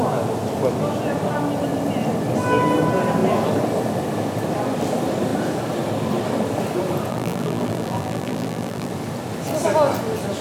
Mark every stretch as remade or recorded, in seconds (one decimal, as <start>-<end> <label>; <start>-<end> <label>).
0.0-7.1 recorded; 7.1-8.9 remade; 8.9-10.4 recorded